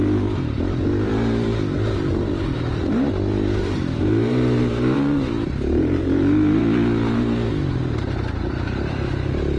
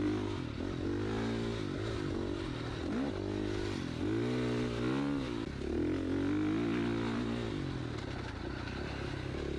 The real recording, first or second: second